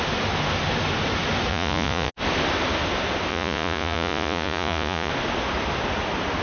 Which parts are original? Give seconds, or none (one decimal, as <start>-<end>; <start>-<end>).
0.0-1.5; 2.1-3.3; 5.1-6.4